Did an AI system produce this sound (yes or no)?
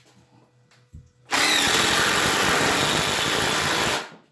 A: no